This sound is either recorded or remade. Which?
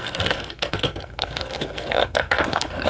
remade